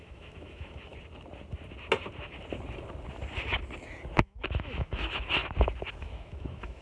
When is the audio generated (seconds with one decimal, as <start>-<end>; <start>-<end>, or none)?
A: 0.0-0.9; 4.2-5.4; 6.0-6.8